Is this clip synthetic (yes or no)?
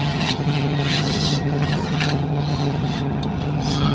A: yes